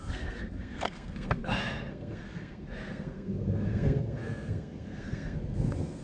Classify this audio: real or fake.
fake